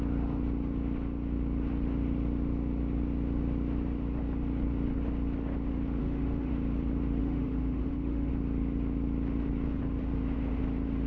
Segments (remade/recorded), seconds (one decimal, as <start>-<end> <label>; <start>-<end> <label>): 0.0-6.0 recorded; 6.0-6.5 remade; 6.5-7.2 recorded; 7.2-8.3 remade; 8.3-11.1 recorded